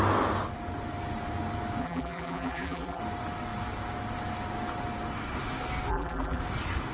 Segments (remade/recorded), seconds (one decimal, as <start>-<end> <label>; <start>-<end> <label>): 0.0-1.8 recorded; 1.8-3.0 remade; 3.0-5.9 recorded; 5.9-6.4 remade; 6.4-6.9 recorded